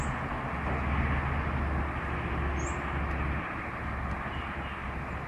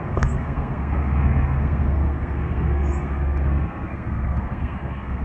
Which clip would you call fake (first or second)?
second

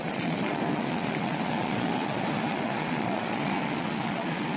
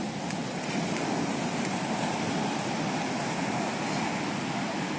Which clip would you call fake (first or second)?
first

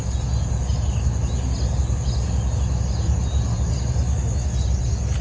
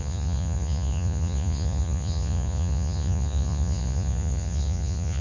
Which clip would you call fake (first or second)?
second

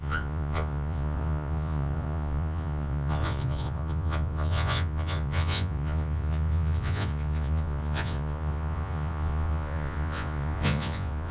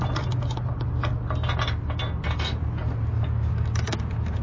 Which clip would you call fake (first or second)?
first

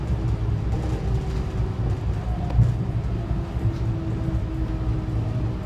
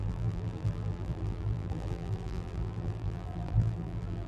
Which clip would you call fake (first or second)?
second